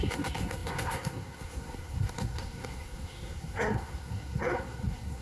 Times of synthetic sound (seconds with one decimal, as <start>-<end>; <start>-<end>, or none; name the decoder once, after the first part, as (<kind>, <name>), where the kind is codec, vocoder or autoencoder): 0.0-5.2 (codec, SNAC)